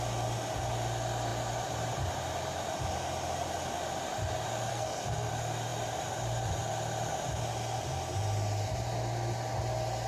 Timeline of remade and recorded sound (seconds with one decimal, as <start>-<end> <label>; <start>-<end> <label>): 0.0-4.7 recorded; 4.7-5.3 remade; 5.3-10.1 recorded

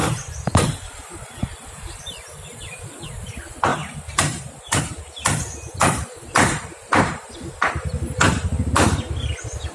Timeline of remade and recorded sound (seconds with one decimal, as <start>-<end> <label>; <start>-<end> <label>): 0.0-2.0 remade; 2.0-3.7 recorded; 3.7-4.8 remade; 4.8-5.8 recorded; 5.8-8.9 remade; 8.9-9.7 recorded

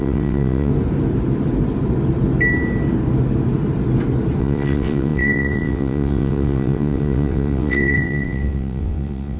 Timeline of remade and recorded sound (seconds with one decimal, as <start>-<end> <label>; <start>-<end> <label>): 0.0-0.7 remade; 0.7-4.4 recorded; 4.4-9.4 remade

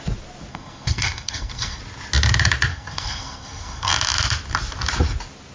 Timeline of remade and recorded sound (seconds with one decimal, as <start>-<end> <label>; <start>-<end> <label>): 0.0-0.5 recorded; 0.5-1.8 remade; 1.8-2.7 recorded; 2.7-3.9 remade; 3.9-5.5 recorded

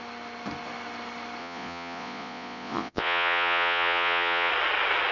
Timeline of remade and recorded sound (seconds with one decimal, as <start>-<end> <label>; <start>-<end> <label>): 0.0-1.4 recorded; 1.4-4.5 remade; 4.5-5.1 recorded